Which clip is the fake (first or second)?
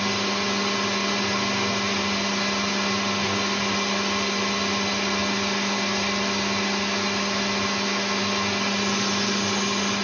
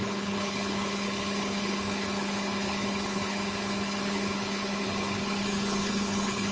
second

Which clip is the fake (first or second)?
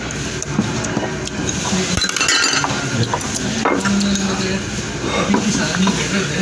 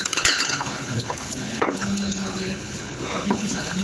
second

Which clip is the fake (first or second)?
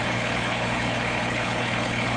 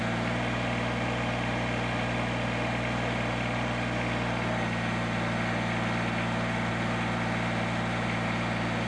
first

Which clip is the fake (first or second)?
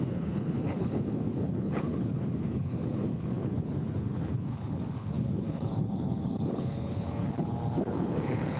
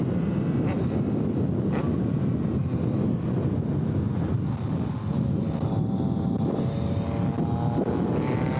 first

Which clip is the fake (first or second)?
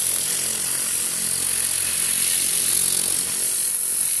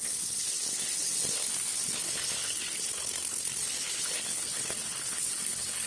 second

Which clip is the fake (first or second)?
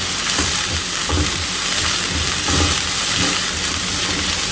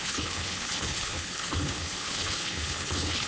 second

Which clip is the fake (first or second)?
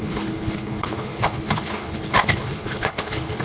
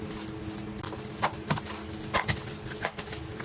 first